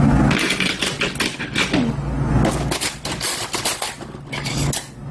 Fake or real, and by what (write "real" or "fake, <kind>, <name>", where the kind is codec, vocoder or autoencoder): real